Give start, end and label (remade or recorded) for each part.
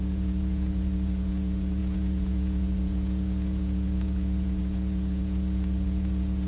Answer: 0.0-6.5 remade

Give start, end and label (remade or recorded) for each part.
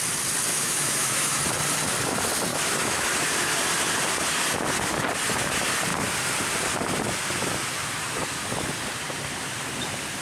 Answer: 0.0-0.5 recorded; 0.5-1.4 remade; 1.4-2.5 recorded; 2.5-3.3 remade; 3.3-10.2 recorded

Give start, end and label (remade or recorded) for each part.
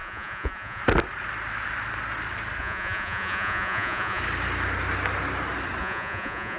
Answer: 0.0-0.8 remade; 0.8-2.6 recorded; 2.6-4.2 remade; 4.2-5.8 recorded; 5.8-6.6 remade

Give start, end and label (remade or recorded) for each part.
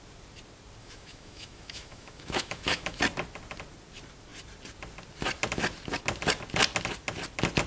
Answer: 0.0-0.8 recorded; 0.8-3.0 remade; 3.0-7.7 recorded